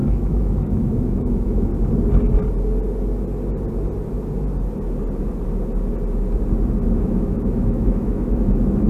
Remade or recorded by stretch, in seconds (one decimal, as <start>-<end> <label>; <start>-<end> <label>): 0.0-1.7 remade; 1.7-6.9 recorded; 6.9-8.9 remade